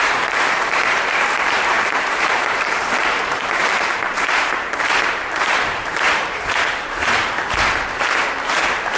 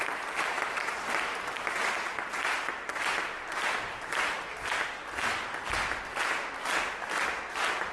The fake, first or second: first